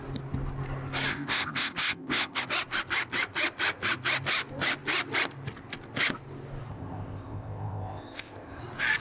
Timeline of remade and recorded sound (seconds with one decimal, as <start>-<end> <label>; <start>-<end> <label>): 0.0-1.1 recorded; 1.1-2.4 remade; 2.4-6.7 recorded; 6.7-8.6 remade; 8.6-9.0 recorded

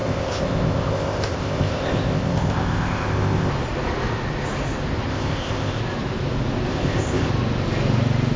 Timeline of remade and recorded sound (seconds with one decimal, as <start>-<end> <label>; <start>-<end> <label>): 0.0-3.5 remade; 3.5-5.1 recorded; 5.1-5.8 remade; 5.8-6.7 recorded; 6.7-7.3 remade; 7.3-8.4 recorded

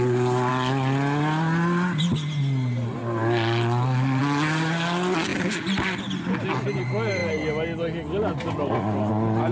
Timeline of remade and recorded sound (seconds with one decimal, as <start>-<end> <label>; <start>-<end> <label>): 0.0-9.5 recorded

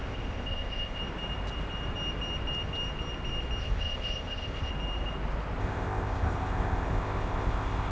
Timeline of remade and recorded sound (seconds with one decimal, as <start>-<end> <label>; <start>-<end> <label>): 0.0-1.0 remade; 1.0-3.6 recorded; 3.6-4.7 remade; 4.7-5.6 recorded; 5.6-7.9 remade

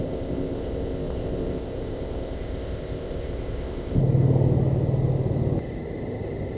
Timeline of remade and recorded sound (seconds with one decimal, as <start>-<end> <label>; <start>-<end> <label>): 0.0-4.0 remade; 4.0-6.6 recorded